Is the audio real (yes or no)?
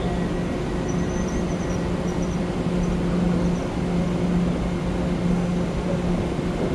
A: yes